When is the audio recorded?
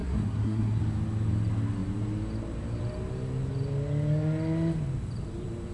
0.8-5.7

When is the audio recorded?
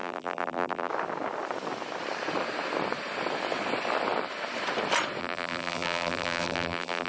0.9-5.2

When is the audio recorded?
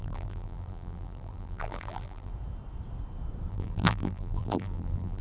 2.3-3.5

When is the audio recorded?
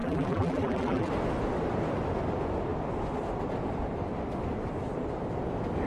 1.1-5.9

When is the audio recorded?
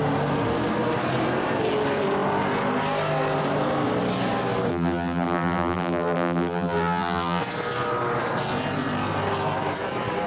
0.0-4.7; 7.4-10.3